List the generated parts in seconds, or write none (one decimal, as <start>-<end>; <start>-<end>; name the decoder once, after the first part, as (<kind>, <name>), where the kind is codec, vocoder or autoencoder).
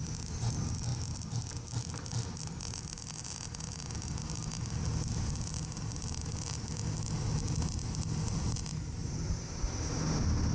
9.0-9.7 (vocoder, BigVGAN v2)